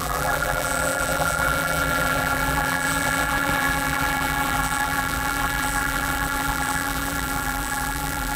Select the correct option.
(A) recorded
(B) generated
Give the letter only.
B